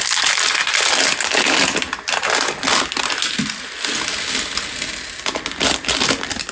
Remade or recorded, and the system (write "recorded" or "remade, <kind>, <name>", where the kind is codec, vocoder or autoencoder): recorded